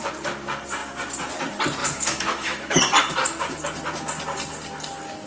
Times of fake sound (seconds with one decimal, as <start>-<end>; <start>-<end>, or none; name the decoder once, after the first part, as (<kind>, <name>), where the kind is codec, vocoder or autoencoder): 1.8-2.8 (autoencoder, DAC-VAE)